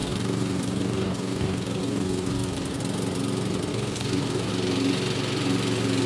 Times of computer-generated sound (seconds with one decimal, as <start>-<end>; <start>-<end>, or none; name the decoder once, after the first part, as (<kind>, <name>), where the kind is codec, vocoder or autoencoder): 0.0-2.8 (codec, DAC); 3.7-4.5

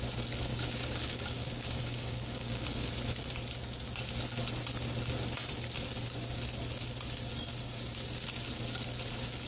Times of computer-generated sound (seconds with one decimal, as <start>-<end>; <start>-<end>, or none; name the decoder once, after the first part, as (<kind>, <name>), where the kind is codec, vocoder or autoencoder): 0.5-2.9 (codec, DAC)

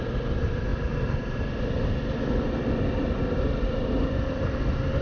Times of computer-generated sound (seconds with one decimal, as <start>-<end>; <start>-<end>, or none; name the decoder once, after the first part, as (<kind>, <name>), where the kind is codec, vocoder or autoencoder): none

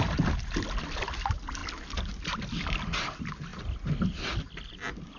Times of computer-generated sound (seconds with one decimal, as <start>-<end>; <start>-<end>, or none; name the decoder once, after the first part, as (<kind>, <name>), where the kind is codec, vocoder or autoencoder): none

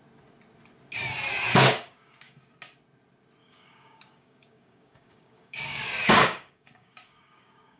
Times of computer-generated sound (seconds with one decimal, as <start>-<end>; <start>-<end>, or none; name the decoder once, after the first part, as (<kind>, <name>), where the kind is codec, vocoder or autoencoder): 1.5-2.5 (codec, DAC); 3.4-7.8